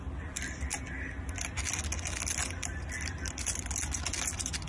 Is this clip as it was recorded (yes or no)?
yes